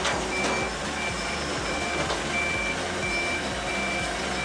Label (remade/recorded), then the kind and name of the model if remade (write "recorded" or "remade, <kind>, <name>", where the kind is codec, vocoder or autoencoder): recorded